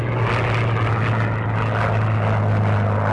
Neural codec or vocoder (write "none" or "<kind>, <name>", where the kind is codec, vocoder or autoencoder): none